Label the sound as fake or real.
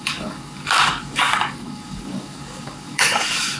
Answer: fake